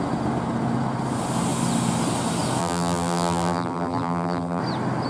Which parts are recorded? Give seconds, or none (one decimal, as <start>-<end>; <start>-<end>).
0.0-2.6; 4.6-5.1